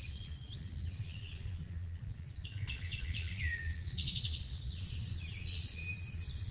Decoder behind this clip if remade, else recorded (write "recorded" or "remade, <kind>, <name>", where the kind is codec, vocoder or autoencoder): remade, vocoder, Vocos